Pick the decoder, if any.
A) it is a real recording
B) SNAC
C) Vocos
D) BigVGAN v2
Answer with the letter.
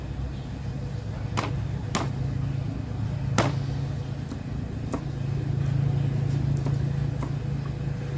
A